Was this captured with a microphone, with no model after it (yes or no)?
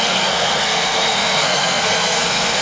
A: no